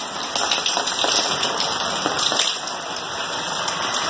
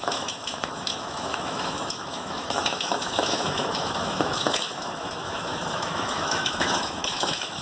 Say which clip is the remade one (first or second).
second